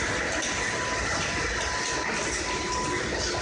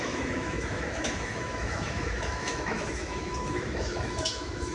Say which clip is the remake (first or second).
second